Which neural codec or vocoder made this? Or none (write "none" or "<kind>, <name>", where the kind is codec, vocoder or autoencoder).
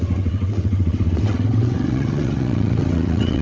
vocoder, WaveNeXt